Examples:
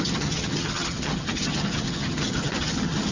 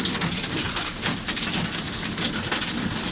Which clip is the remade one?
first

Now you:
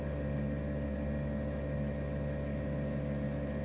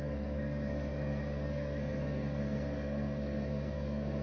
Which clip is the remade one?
second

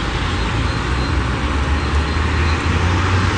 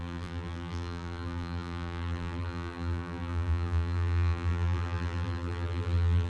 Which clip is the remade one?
second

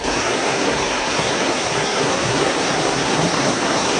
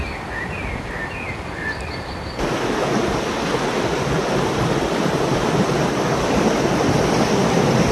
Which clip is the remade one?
first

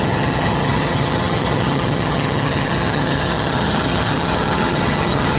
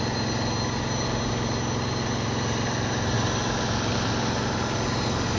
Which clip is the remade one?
first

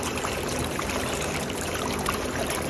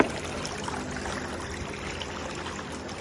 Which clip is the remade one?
first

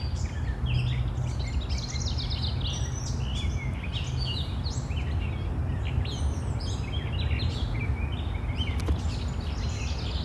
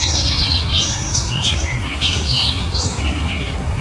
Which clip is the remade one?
second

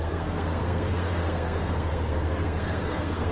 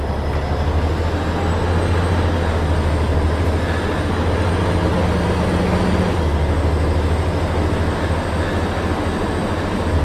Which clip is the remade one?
first